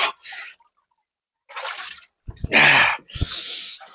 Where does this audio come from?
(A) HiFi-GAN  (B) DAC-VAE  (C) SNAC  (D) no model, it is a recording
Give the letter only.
D